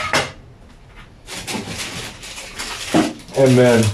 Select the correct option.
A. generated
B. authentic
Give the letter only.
B